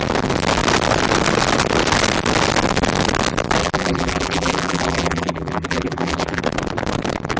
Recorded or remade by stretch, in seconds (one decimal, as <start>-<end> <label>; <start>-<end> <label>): 0.0-3.6 recorded; 3.6-6.4 remade; 6.4-7.4 recorded